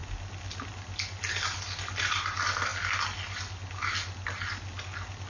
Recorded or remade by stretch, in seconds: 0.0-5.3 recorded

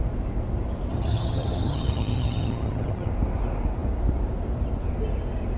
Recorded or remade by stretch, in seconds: 0.0-0.9 recorded; 0.9-3.1 remade; 3.1-5.6 recorded